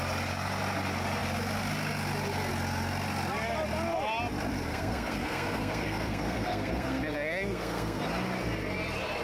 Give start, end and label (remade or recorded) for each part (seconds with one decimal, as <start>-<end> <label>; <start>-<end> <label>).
0.0-4.7 recorded; 4.7-8.0 remade; 8.0-9.2 recorded